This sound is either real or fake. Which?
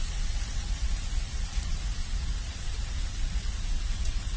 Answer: fake